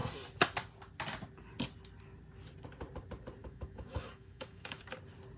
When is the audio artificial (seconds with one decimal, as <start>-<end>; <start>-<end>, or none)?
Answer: 3.4-4.8